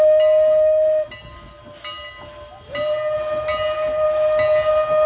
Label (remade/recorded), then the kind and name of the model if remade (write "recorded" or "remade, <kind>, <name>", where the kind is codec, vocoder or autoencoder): recorded